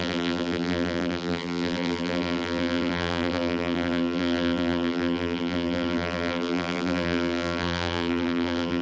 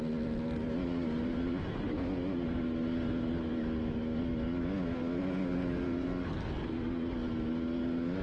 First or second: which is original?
second